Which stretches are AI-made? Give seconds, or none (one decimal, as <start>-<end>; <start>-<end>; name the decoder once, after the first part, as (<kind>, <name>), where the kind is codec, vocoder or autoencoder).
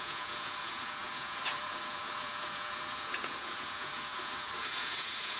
0.0-5.4 (vocoder, Vocos)